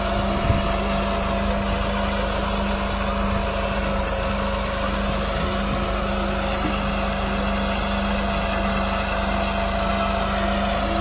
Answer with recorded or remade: recorded